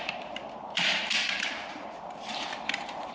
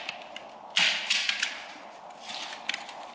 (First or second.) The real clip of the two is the second